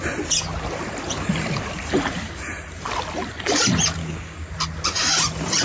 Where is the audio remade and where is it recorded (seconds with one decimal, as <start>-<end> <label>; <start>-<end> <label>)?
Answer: 0.0-4.0 recorded; 4.0-4.5 remade; 4.5-5.6 recorded